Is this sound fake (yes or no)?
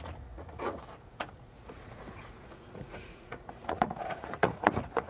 yes